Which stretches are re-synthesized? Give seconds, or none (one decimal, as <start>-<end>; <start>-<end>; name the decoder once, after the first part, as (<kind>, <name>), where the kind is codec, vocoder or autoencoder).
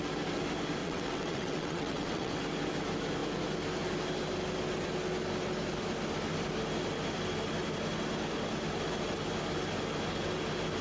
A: 0.8-2.4 (vocoder, WaveNeXt)